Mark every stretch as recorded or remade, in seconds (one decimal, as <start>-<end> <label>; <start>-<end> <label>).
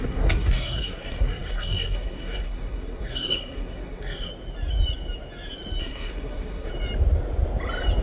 0.0-4.3 remade; 4.3-5.8 recorded; 5.8-6.7 remade; 6.7-8.0 recorded